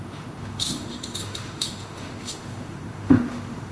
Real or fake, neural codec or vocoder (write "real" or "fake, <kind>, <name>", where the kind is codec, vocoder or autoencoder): fake, autoencoder, DAC-VAE